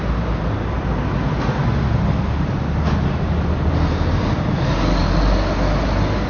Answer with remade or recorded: recorded